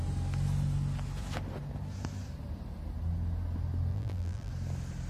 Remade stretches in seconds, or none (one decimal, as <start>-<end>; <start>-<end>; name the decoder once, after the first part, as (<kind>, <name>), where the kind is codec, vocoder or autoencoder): 3.9-4.5 (vocoder, BigVGAN v2)